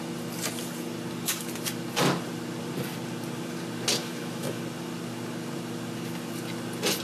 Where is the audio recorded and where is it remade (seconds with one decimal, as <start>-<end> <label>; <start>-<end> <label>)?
0.0-4.0 recorded; 4.0-4.6 remade; 4.6-7.0 recorded